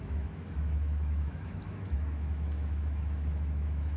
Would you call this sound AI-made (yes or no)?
yes